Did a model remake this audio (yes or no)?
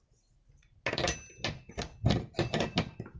no